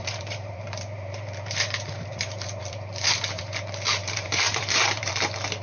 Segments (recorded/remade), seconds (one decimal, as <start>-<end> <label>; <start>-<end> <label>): 0.0-3.4 remade; 3.4-4.0 recorded; 4.0-5.1 remade; 5.1-5.6 recorded